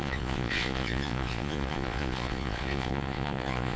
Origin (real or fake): fake